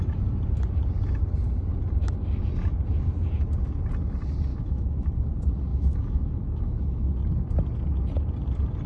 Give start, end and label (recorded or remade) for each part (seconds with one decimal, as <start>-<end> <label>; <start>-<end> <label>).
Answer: 0.0-4.5 recorded; 4.5-5.1 remade; 5.1-5.7 recorded; 5.7-7.1 remade; 7.1-8.9 recorded